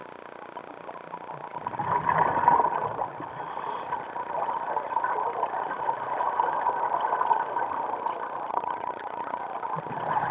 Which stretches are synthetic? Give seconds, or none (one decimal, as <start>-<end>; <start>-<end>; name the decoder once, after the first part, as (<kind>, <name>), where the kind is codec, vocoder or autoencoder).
8.5-9.4 (vocoder, HiFi-GAN)